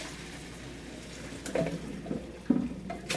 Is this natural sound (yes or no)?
yes